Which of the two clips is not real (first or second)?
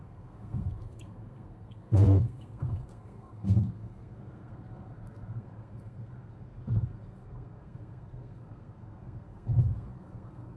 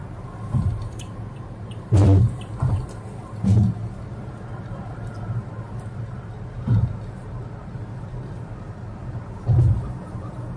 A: first